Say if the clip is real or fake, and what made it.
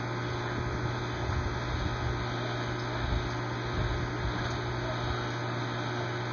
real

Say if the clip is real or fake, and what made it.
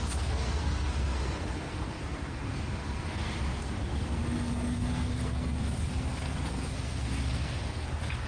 fake, codec, SNAC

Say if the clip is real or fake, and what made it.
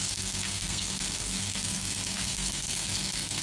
fake, codec, SNAC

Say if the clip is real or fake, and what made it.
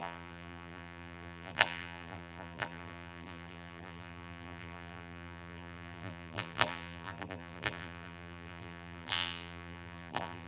fake, vocoder, BigVGAN v2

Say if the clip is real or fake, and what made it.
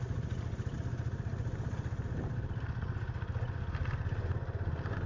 real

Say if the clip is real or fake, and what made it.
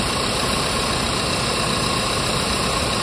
real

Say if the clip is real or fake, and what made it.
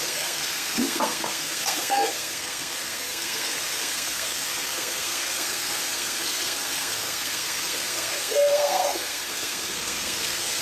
fake, codec, SNAC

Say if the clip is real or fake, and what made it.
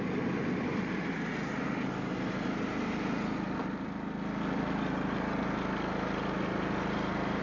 real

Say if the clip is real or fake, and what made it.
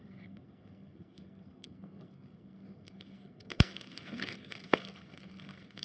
fake, codec, SNAC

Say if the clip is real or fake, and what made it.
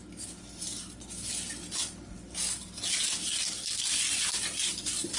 real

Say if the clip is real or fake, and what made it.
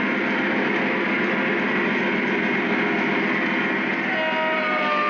real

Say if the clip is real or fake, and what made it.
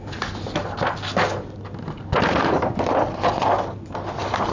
real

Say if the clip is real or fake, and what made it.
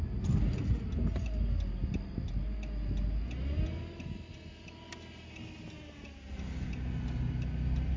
real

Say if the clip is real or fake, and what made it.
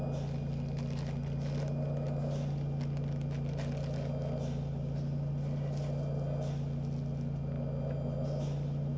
real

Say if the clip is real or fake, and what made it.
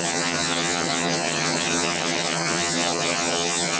fake, vocoder, HiFi-GAN